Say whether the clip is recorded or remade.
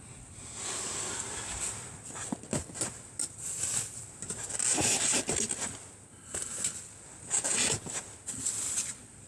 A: recorded